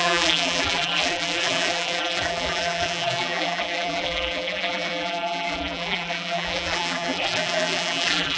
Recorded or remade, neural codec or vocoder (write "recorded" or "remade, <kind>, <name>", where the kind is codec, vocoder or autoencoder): remade, vocoder, BigVGAN v2